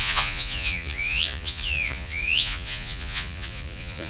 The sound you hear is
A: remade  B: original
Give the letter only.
A